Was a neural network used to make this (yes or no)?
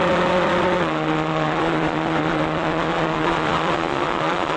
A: yes